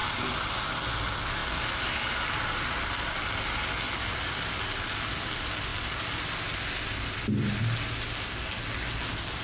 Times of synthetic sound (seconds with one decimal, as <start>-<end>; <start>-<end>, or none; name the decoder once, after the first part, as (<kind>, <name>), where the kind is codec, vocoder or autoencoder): 0.0-0.6 (vocoder, BigVGAN v2); 1.4-2.2